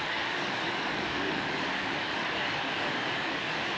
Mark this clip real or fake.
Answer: fake